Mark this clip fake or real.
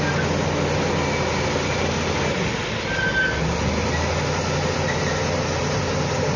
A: real